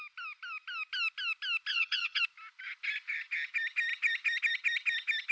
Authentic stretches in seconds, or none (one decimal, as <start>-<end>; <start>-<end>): 0.0-1.7; 2.2-5.3